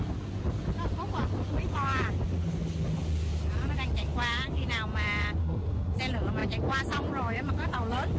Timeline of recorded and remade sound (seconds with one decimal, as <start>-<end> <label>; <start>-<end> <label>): 0.0-5.4 recorded; 5.4-6.0 remade; 6.0-8.2 recorded